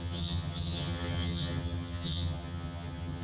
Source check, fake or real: fake